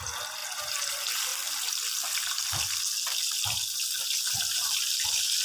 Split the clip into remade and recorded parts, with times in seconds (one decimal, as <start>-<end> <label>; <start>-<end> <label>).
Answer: 0.0-5.4 recorded